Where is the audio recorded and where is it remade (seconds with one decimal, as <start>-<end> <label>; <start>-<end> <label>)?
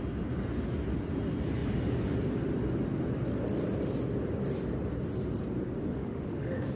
0.0-5.9 recorded; 5.9-6.8 remade